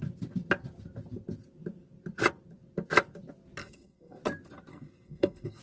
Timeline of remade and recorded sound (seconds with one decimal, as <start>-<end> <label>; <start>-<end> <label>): 0.0-3.6 recorded; 3.6-4.2 remade; 4.2-4.7 recorded; 4.7-5.6 remade